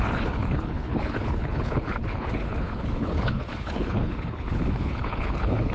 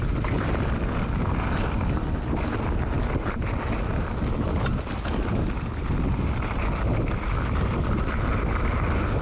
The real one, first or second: second